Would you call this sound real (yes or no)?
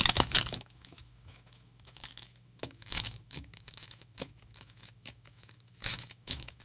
no